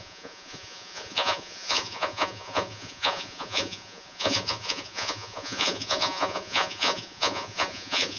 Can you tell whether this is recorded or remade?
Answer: remade